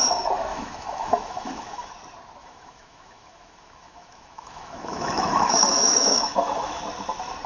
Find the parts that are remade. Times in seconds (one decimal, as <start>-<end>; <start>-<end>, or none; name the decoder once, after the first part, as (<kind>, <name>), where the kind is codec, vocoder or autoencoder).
0.5-1.9 (autoencoder, DAC-VAE); 2.4-6.8